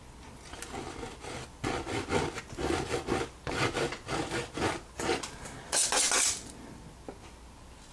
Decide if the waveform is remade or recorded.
recorded